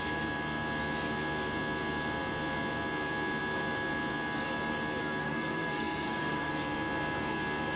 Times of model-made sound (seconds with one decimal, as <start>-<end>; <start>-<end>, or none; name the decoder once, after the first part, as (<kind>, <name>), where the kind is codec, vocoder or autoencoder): 5.2-6.5 (codec, SNAC)